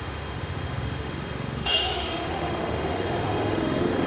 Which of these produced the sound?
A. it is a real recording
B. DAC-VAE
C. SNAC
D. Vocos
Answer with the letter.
B